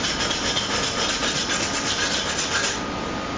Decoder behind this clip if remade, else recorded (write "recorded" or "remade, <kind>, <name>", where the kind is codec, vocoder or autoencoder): recorded